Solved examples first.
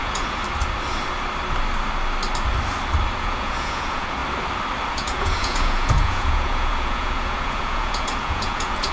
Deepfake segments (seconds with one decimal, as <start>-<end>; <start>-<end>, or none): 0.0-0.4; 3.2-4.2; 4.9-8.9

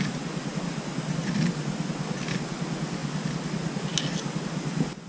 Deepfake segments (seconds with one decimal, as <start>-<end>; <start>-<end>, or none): none

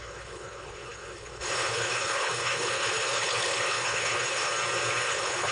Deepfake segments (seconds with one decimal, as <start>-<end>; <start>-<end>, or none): 0.0-4.5; 5.1-5.5